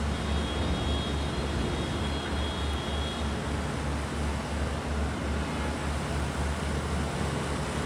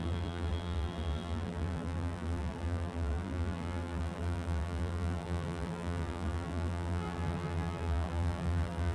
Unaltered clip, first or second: first